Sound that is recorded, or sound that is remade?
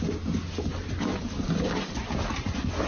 recorded